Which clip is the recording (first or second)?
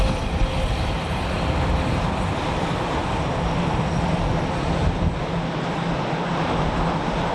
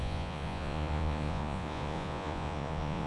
first